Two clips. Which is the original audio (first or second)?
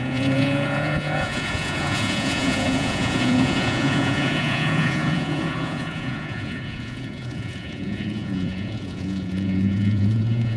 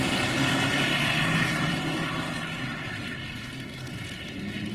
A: second